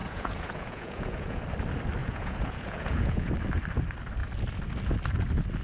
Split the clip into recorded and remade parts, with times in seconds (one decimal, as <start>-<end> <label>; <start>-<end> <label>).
0.0-1.4 remade; 1.4-2.0 recorded; 2.0-3.3 remade; 3.3-5.6 recorded